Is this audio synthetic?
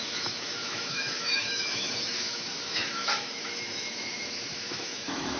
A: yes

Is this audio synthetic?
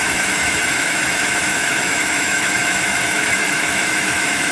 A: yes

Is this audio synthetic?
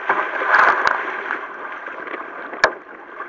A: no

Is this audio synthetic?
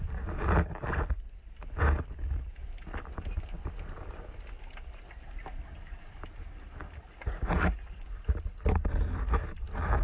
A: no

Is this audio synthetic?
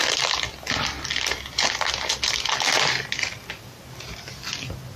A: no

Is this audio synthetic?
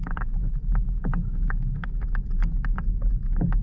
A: yes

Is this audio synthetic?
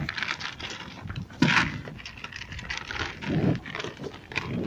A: no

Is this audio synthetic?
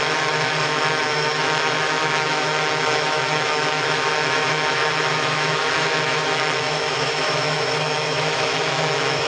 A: yes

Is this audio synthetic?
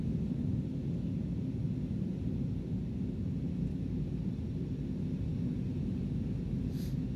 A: no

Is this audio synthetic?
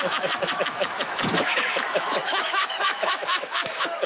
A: yes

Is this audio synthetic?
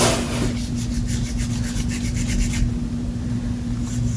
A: no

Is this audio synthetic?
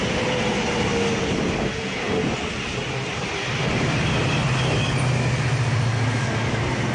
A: no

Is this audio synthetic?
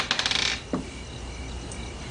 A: no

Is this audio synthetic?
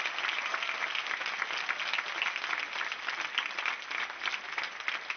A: no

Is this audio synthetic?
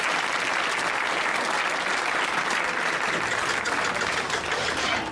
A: no